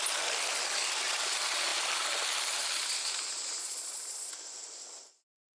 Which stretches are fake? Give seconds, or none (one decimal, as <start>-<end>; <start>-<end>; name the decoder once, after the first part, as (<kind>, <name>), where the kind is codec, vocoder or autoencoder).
3.6-4.3 (vocoder, Vocos)